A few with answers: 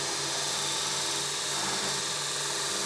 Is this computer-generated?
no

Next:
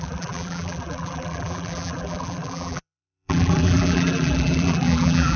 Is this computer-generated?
yes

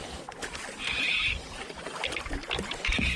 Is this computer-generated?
no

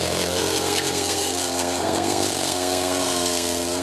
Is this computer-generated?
yes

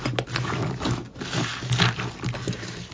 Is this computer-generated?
no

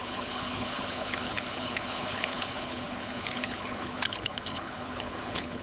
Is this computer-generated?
yes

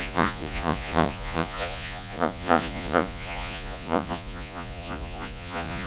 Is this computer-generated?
yes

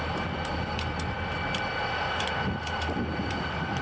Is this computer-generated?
no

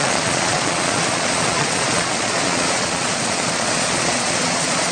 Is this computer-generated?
yes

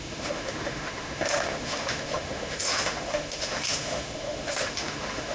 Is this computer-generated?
yes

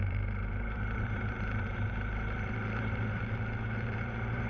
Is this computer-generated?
yes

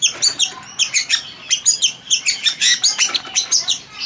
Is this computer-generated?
no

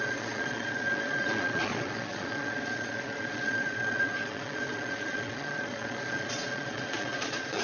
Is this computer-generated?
yes